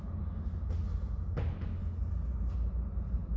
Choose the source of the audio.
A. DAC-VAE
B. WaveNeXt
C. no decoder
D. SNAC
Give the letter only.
C